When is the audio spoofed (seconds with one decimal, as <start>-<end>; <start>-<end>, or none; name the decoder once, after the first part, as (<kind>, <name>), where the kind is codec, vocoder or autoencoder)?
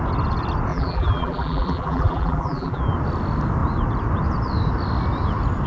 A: 0.7-2.8 (vocoder, BigVGAN v2)